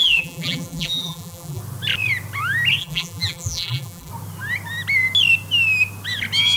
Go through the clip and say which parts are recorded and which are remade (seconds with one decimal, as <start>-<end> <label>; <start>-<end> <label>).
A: 0.0-1.6 remade; 1.6-2.8 recorded; 2.8-4.1 remade; 4.1-6.6 recorded